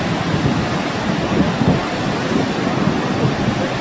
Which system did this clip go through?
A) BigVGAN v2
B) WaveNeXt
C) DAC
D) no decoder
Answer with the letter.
D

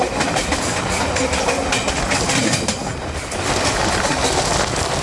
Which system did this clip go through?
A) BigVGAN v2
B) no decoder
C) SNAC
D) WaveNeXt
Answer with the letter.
B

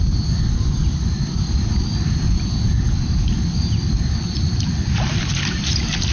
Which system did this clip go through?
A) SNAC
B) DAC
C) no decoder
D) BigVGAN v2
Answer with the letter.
C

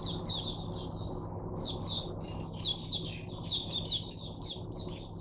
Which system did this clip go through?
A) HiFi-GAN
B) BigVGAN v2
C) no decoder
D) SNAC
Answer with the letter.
C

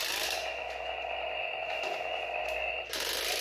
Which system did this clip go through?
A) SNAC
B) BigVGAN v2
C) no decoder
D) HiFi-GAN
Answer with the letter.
C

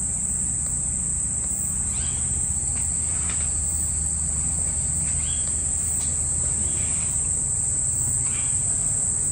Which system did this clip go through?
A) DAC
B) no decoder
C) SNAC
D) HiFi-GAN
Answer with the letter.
B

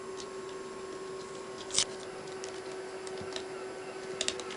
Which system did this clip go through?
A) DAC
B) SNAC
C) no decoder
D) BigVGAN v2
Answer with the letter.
C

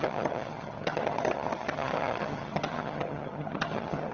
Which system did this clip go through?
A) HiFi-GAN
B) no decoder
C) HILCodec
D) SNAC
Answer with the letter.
A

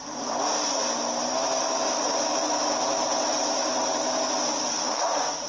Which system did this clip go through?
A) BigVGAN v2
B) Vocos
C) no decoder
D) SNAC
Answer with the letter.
C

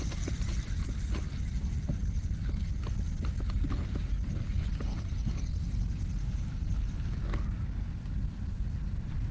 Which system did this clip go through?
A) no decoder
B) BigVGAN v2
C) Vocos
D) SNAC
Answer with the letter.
A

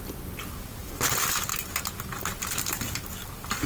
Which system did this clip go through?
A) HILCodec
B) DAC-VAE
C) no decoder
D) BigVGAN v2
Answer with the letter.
C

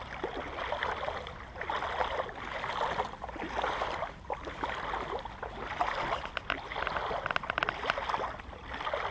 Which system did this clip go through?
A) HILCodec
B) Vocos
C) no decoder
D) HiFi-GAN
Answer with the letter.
C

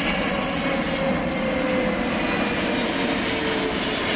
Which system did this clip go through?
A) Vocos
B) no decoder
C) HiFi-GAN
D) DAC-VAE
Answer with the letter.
B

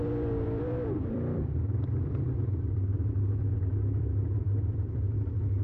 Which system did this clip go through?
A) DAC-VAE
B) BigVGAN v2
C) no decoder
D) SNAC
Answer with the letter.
B